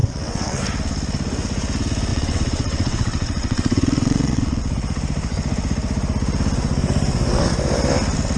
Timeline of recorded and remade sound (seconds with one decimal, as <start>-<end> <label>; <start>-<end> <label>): 0.0-0.6 remade; 0.6-2.1 recorded; 2.1-4.6 remade; 4.6-8.4 recorded